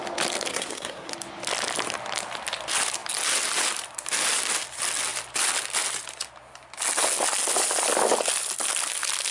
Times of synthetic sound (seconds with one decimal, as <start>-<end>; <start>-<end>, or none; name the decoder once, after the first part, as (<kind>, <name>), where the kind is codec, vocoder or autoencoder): 0.5-1.1 (codec, SNAC)